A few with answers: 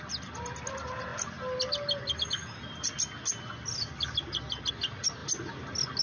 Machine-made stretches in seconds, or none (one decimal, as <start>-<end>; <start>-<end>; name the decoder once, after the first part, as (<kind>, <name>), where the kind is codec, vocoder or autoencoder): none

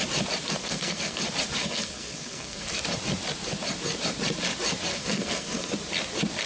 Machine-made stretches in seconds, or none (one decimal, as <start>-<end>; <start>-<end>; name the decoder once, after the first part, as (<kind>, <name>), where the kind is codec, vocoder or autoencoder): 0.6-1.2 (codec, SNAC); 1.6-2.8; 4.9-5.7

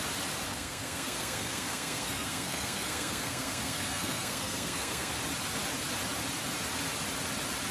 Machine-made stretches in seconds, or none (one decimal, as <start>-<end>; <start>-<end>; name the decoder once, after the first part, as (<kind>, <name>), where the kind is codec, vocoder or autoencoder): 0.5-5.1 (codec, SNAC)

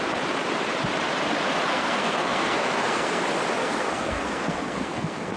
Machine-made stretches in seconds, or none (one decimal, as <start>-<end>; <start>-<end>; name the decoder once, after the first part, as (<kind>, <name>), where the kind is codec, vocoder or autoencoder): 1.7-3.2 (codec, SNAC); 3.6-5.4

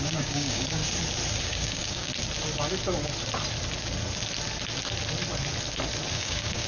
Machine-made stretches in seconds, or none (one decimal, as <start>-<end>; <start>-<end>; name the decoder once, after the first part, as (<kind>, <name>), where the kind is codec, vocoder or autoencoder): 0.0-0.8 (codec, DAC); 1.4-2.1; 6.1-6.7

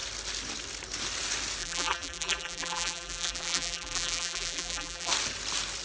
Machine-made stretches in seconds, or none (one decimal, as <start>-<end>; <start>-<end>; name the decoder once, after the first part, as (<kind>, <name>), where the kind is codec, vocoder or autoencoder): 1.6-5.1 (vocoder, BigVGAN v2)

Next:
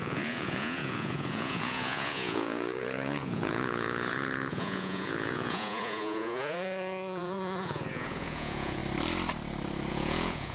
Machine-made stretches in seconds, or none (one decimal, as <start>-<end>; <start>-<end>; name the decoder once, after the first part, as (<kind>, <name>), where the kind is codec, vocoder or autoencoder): 0.0-8.8 (vocoder, Vocos); 9.9-10.5